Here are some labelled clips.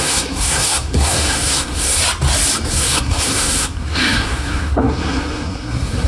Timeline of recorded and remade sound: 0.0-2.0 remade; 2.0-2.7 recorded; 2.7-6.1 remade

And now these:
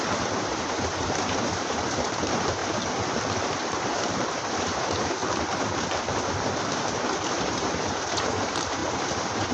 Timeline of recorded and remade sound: 0.0-2.6 remade; 2.6-3.4 recorded; 3.4-5.2 remade; 5.2-6.7 recorded; 6.7-9.5 remade